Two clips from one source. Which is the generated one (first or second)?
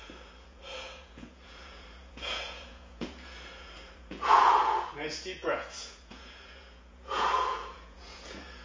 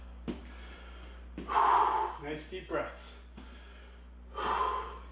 first